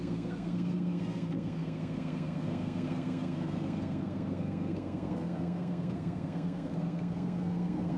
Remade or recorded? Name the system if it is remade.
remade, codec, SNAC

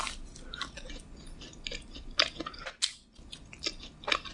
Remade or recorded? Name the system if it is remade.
recorded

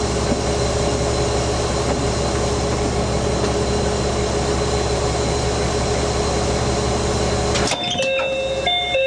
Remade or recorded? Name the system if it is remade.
recorded